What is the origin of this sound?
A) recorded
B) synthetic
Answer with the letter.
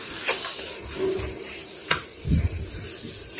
B